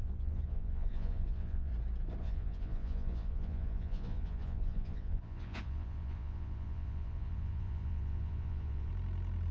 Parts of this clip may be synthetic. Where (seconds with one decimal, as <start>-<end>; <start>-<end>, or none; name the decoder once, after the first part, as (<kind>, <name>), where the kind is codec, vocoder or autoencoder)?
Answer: 0.0-1.7 (vocoder, Vocos); 2.2-8.9